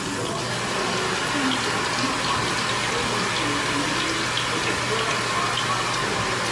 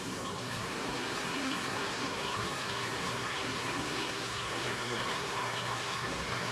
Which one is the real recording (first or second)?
first